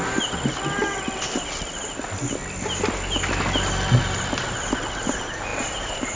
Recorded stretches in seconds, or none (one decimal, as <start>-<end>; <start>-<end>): 0.0-5.5